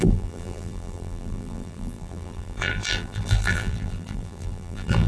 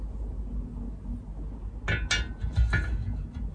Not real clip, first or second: first